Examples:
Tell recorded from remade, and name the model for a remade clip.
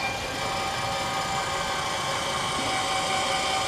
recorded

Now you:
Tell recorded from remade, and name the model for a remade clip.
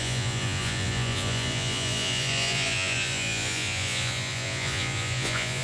remade, vocoder, Vocos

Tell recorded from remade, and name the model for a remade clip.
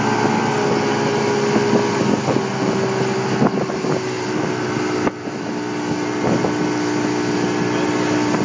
recorded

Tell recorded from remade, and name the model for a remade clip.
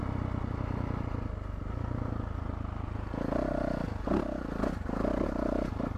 recorded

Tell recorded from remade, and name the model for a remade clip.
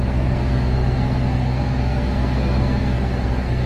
remade, codec, SNAC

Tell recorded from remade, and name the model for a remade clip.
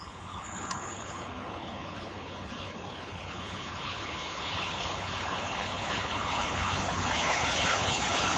remade, codec, HILCodec